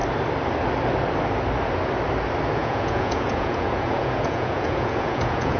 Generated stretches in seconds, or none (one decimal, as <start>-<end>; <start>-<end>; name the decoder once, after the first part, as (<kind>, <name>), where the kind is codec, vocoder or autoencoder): 2.6-5.6 (vocoder, Vocos)